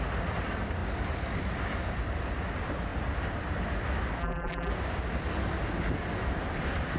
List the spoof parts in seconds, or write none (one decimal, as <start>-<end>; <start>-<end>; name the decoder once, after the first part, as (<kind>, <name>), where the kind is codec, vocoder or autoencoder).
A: 4.2-4.7 (vocoder, BigVGAN v2)